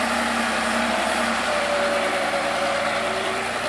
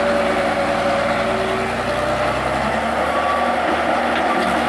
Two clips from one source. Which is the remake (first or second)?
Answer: first